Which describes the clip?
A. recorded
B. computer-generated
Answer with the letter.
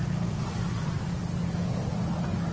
A